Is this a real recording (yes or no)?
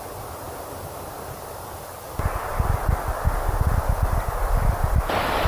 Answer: yes